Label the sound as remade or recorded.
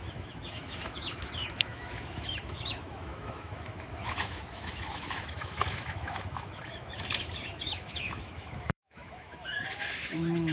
remade